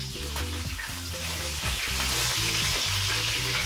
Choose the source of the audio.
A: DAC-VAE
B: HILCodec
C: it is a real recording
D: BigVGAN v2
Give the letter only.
C